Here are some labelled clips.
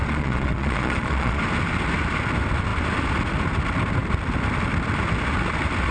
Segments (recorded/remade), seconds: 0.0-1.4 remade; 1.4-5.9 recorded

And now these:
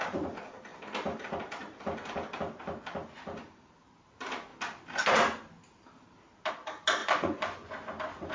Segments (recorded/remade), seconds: 0.0-7.0 recorded; 7.0-7.7 remade; 7.7-8.3 recorded

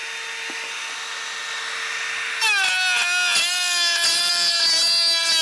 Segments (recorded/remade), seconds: 0.0-5.4 recorded